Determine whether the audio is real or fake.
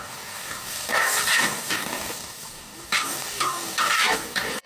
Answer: fake